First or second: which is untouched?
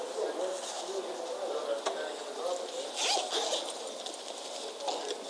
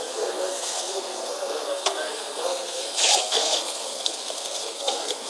first